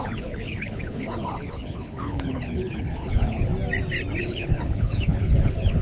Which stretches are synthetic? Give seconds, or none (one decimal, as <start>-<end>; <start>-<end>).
0.0-3.5; 4.2-5.8